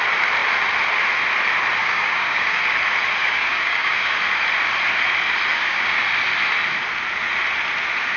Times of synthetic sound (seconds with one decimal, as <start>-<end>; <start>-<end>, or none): 1.8-2.6; 3.2-4.2; 5.5-6.0